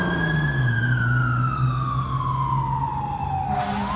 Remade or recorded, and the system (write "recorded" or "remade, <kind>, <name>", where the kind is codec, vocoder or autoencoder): recorded